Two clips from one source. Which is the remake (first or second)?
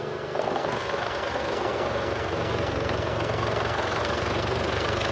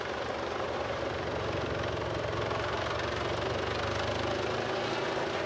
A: first